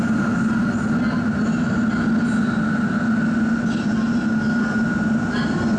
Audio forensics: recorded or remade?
recorded